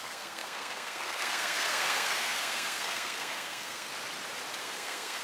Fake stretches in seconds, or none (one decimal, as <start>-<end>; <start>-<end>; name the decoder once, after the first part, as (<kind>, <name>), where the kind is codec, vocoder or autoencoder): 0.0-3.9 (codec, SNAC); 4.6-5.2